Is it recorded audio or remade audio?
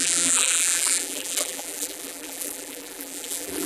remade